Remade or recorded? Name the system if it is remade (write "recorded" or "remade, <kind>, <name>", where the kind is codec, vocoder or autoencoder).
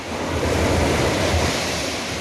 recorded